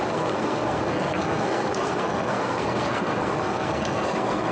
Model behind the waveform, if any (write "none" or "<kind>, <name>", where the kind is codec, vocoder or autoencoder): codec, SNAC